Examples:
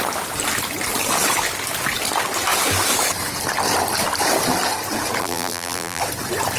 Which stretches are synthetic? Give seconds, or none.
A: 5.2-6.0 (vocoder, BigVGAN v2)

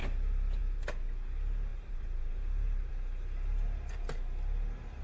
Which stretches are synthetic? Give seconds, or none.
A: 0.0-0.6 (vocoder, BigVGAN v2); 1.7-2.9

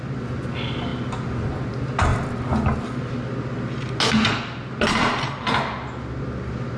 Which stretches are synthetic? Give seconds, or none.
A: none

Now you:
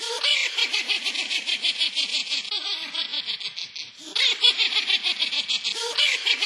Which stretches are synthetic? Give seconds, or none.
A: 0.0-3.1 (vocoder, BigVGAN v2); 6.0-6.5

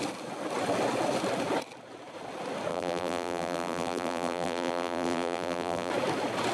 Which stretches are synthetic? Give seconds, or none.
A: 2.7-5.9 (vocoder, BigVGAN v2)

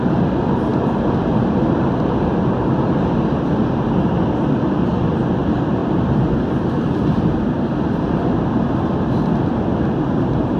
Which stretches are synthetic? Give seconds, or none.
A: none

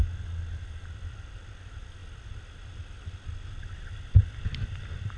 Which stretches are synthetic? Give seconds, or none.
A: none

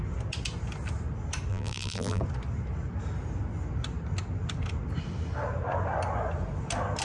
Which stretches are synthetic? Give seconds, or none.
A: 1.5-2.2 (vocoder, BigVGAN v2)